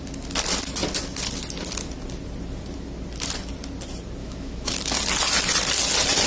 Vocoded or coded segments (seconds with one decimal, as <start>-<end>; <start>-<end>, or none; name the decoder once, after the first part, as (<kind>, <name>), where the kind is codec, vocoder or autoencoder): 4.2-4.7 (autoencoder, DAC-VAE)